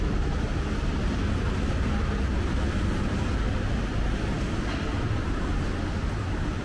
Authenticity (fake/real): real